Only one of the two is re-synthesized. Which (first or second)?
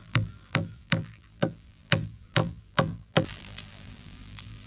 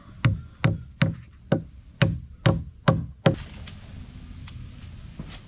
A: first